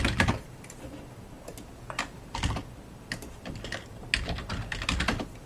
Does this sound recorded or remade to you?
recorded